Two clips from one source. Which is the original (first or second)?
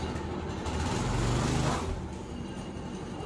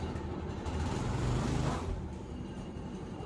first